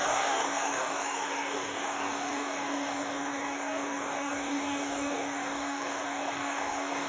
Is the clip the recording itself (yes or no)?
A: no